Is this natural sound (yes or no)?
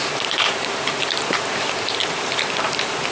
no